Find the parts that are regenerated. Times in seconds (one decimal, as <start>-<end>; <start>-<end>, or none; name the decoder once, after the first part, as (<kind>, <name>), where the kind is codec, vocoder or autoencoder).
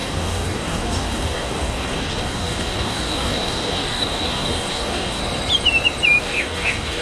0.0-5.2 (codec, DAC); 6.2-7.0